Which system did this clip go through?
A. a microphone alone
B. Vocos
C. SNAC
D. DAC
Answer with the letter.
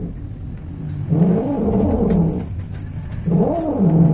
A